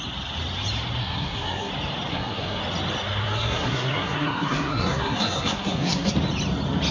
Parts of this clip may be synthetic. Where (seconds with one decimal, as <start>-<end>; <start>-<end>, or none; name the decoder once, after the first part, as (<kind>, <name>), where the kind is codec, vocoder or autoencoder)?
1.0-1.7 (codec, SNAC); 2.1-2.6; 3.2-6.1